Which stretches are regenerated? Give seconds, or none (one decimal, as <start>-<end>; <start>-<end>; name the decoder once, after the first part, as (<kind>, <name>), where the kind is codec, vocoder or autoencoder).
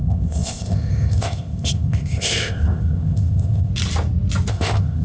0.0-3.7 (codec, ZipCodec); 4.5-5.0